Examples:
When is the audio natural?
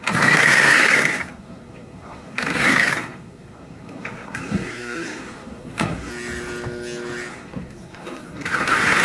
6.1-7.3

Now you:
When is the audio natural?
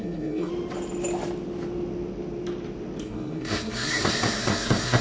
0.5-3.0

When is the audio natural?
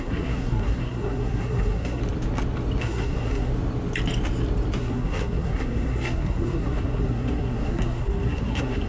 2.0-2.8; 3.5-4.8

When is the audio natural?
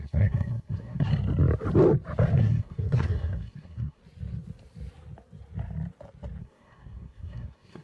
1.1-2.3; 4.0-6.4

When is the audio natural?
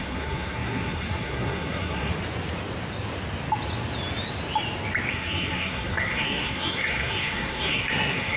2.1-5.1